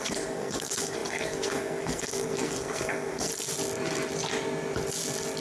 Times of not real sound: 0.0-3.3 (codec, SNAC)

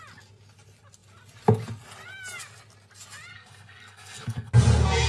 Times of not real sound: 3.3-4.5 (codec, SNAC)

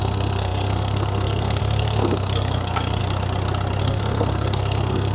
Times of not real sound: 0.0-3.0 (codec, SNAC); 3.8-5.1